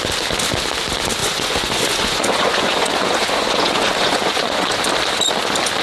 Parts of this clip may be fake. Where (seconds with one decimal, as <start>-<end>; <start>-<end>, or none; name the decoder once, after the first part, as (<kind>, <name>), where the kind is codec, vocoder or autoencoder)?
1.2-4.7 (vocoder, Vocos)